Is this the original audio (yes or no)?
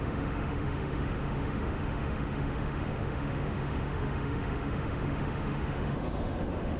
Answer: no